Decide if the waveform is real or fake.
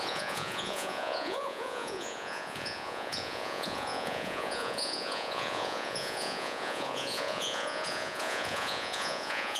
fake